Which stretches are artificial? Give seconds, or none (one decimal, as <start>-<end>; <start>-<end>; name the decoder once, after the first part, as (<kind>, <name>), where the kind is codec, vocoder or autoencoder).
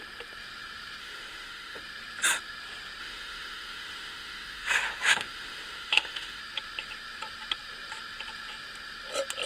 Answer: 1.0-1.8 (autoencoder, DAC-VAE); 3.0-6.4